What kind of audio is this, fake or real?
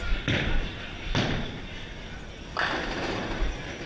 real